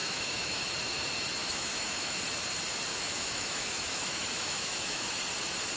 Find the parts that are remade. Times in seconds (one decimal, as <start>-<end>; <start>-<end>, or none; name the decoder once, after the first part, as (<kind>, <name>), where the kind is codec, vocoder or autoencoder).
0.0-0.6 (autoencoder, DAC-VAE); 1.4-2.2; 2.9-5.1